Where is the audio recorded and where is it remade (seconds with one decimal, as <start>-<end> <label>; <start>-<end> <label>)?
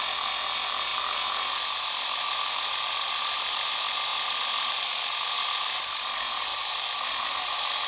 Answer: 0.0-6.5 recorded; 6.5-7.2 remade; 7.2-7.9 recorded